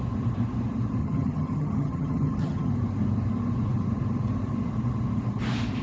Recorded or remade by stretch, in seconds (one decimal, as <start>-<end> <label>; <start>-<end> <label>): 0.0-1.0 recorded; 1.0-2.7 remade; 2.7-5.8 recorded